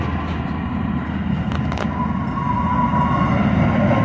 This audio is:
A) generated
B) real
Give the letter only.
B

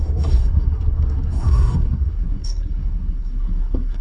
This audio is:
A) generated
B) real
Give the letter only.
A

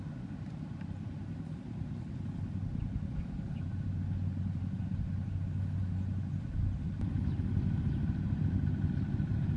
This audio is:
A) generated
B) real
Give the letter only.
B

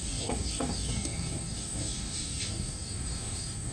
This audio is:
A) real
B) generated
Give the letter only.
B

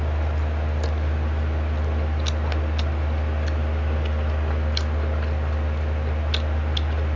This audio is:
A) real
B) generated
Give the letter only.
A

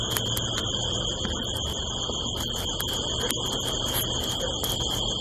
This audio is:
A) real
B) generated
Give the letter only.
A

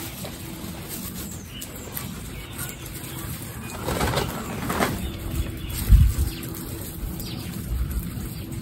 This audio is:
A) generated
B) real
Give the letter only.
B